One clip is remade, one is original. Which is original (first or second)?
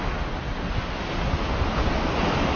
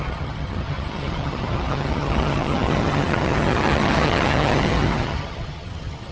first